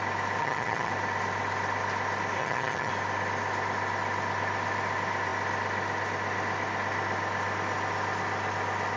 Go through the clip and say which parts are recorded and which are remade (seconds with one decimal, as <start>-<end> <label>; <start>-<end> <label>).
0.0-0.4 recorded; 0.4-0.9 remade; 0.9-2.4 recorded; 2.4-2.9 remade; 2.9-9.0 recorded